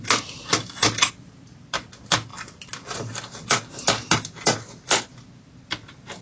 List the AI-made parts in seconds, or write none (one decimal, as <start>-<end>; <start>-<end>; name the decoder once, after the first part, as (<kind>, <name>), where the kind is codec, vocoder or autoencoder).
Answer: none